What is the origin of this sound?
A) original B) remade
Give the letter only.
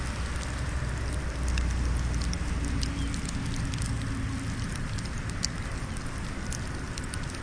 A